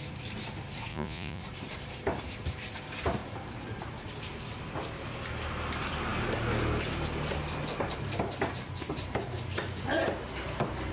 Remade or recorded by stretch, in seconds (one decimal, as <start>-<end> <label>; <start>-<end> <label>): 0.0-0.9 recorded; 0.9-1.4 remade; 1.4-10.9 recorded